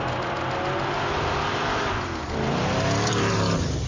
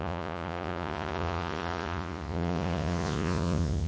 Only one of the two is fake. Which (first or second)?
second